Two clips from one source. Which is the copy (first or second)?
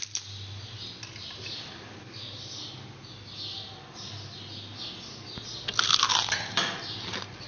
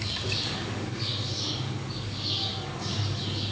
second